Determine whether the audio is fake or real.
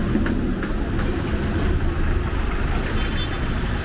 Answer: real